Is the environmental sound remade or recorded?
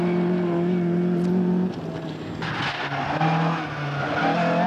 recorded